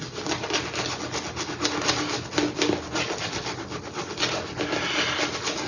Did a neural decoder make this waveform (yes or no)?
no